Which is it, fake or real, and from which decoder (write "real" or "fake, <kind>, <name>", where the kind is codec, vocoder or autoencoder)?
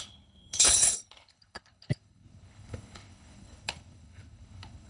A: fake, codec, HILCodec